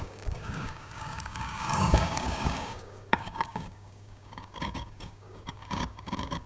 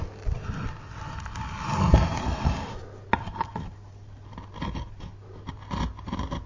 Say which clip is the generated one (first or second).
first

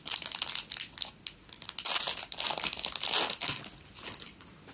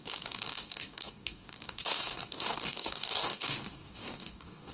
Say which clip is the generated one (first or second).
second